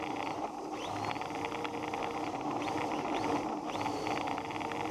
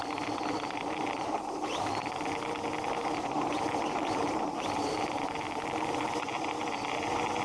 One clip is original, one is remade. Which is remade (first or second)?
second